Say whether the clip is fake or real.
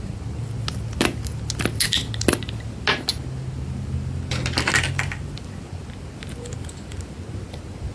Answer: real